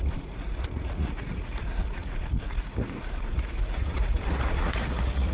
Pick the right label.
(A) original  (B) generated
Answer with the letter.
B